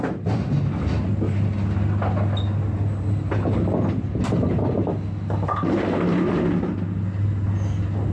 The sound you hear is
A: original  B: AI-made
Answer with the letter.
A